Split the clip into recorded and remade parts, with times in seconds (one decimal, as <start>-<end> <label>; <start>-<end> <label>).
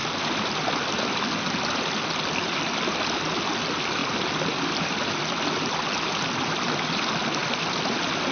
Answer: 0.0-8.3 recorded